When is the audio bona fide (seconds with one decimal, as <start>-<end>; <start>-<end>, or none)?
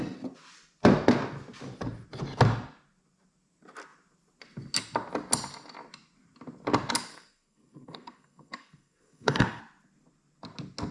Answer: 0.0-7.1; 9.6-10.9